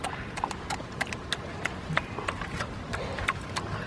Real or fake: real